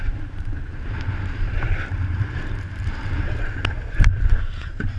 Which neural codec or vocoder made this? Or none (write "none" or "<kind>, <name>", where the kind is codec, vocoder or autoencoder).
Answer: vocoder, BigVGAN v2